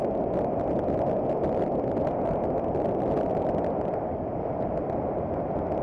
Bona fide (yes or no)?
no